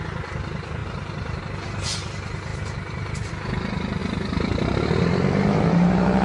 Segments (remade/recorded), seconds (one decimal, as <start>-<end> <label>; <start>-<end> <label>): 0.0-0.8 recorded; 0.8-1.4 remade; 1.4-2.5 recorded; 2.5-3.3 remade; 3.3-6.2 recorded